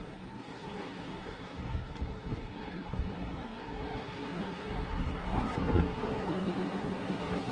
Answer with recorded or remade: remade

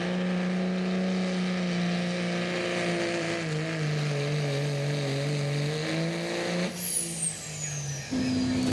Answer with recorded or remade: recorded